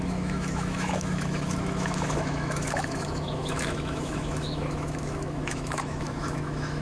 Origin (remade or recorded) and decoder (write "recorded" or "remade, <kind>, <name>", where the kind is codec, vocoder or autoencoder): remade, autoencoder, DAC-VAE